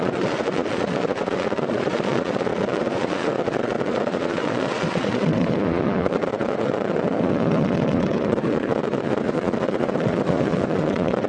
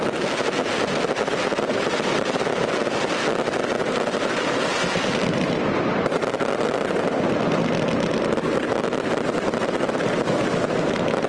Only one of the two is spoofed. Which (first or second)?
first